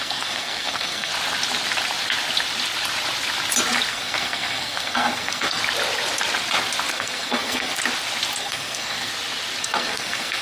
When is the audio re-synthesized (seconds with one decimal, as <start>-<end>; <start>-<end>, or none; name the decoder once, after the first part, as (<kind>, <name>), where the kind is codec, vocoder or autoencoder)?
0.0-1.1 (codec, SNAC); 3.9-5.6; 6.9-7.7; 8.4-9.1; 9.6-10.4